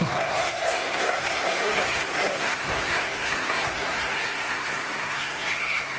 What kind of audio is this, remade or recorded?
remade